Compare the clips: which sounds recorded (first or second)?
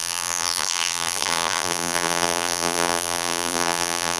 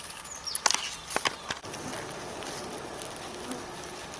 second